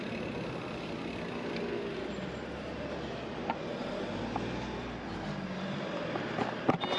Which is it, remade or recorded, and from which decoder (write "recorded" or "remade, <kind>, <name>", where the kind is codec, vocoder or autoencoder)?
recorded